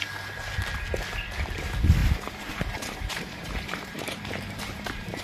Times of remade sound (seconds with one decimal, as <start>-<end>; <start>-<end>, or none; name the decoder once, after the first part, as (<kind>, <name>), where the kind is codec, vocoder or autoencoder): 2.0-5.2 (vocoder, BigVGAN v2)